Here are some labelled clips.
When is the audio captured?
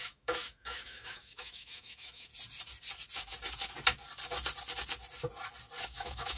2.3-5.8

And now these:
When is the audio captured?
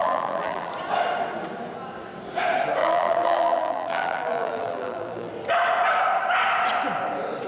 0.7-2.8; 5.3-7.5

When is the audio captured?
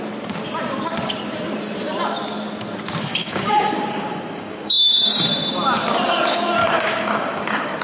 0.0-3.1; 5.2-6.6